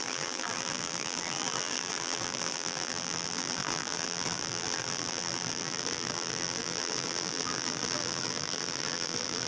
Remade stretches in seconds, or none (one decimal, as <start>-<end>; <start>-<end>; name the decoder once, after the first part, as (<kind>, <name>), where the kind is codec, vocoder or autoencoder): 0.0-9.5 (vocoder, BigVGAN v2)